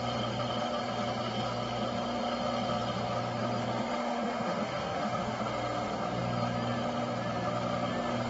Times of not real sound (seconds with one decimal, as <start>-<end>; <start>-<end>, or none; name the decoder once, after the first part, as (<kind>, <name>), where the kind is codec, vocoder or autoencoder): 4.0-5.4 (autoencoder, DAC-VAE)